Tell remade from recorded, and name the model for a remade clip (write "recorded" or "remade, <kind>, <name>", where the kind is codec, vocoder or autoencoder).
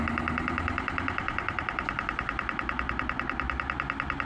recorded